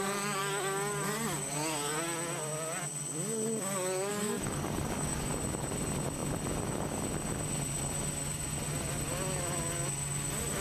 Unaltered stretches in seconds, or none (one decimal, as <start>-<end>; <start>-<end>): 0.0-4.1; 5.3-10.6